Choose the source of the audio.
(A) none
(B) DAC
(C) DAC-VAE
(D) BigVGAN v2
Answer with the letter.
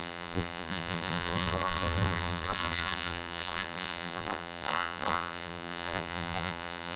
D